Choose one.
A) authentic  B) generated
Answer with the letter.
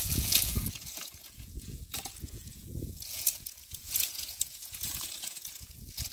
B